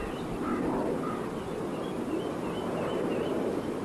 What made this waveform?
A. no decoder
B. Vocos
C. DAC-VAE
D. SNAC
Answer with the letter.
A